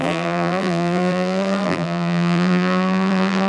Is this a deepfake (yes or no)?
yes